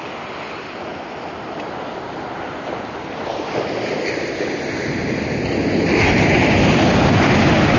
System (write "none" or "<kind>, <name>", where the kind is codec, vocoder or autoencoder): none